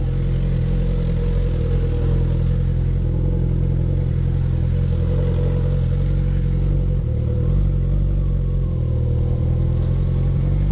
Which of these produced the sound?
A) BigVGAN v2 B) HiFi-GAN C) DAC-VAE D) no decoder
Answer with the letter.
D